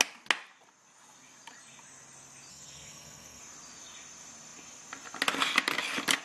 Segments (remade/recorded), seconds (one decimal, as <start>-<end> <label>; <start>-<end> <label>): 0.0-2.5 recorded; 2.5-3.4 remade; 3.4-6.2 recorded